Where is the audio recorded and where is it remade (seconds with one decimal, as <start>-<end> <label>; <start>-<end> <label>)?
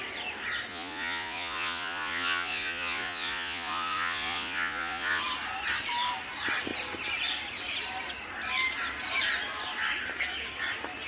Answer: 0.0-0.7 recorded; 0.7-5.2 remade; 5.2-11.1 recorded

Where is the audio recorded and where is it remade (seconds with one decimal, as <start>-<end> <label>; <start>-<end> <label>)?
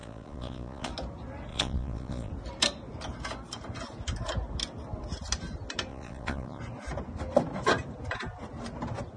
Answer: 0.0-0.9 remade; 0.9-1.5 recorded; 1.5-2.3 remade; 2.3-5.9 recorded; 5.9-6.6 remade; 6.6-9.2 recorded